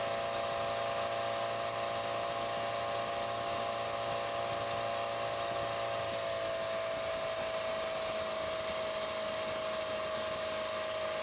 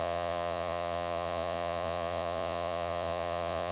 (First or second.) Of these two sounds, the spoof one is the second